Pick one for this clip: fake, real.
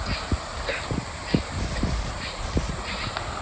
real